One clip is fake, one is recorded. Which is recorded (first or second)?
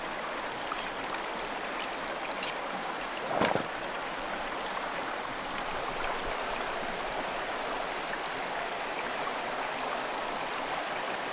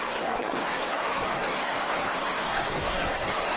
first